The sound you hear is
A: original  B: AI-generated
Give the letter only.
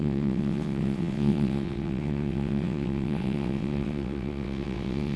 B